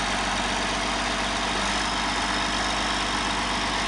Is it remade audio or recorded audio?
recorded